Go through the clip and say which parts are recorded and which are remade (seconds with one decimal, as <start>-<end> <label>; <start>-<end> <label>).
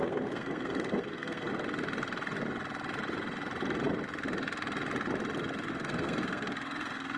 0.0-1.5 remade; 1.5-5.7 recorded; 5.7-7.2 remade